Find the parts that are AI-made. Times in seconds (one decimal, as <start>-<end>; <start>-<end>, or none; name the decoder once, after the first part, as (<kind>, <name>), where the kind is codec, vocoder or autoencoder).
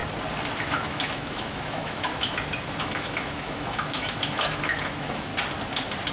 0.6-2.1 (autoencoder, DAC-VAE); 2.8-5.3